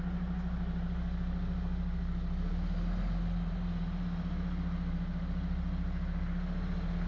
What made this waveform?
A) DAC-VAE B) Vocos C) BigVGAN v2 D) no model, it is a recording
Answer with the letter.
D